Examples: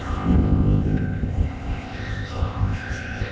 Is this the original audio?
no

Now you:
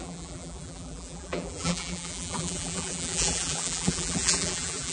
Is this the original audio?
no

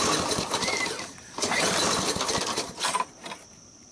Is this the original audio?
no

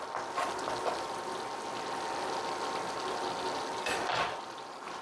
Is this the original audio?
yes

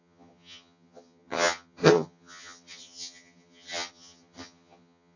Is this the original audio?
no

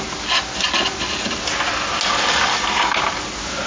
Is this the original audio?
yes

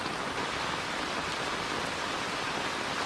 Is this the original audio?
yes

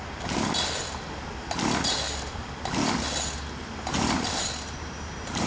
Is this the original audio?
yes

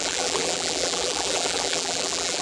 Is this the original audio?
no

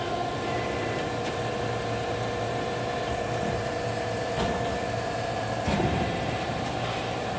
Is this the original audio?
no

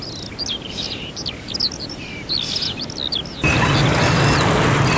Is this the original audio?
yes